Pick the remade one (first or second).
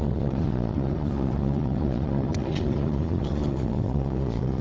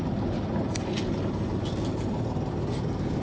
first